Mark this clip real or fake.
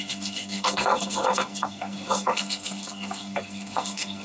fake